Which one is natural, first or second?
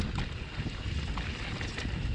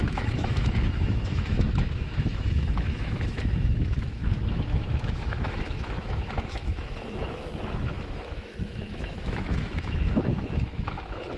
first